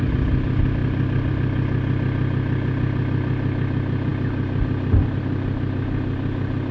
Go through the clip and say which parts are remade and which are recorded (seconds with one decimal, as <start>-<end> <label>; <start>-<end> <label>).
0.0-6.7 recorded